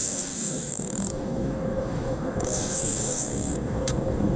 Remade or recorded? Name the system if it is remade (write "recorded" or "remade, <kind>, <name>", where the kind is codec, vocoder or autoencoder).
remade, codec, DAC